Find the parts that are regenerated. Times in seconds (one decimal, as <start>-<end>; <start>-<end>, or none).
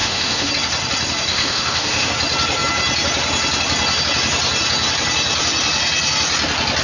0.0-0.5; 1.3-2.1